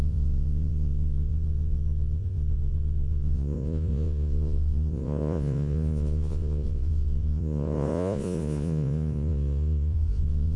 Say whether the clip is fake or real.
fake